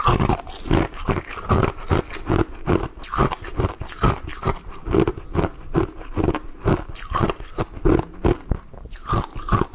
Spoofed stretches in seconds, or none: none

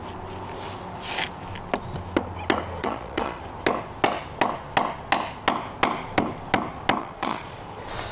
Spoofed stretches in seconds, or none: 2.8-3.4 (vocoder, Vocos); 7.0-7.6

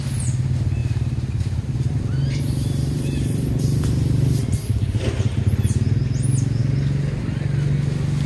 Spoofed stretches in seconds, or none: 0.8-5.4 (vocoder, BigVGAN v2)

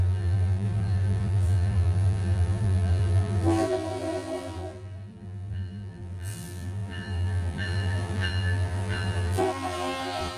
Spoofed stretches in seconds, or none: 0.0-10.4 (vocoder, BigVGAN v2)